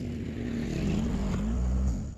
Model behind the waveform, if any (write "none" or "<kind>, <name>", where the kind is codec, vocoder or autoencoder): none